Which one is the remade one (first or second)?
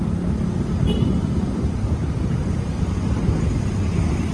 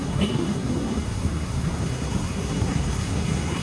second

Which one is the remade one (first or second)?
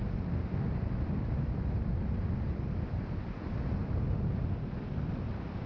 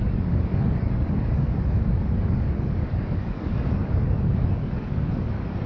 second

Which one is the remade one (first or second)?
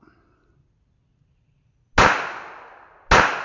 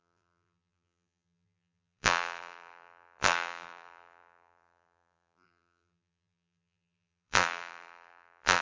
second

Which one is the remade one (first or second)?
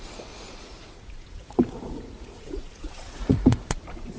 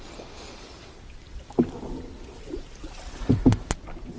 first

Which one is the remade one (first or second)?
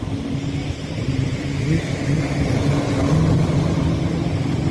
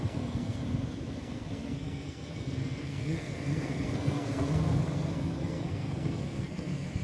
second